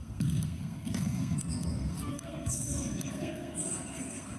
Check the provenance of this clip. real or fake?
fake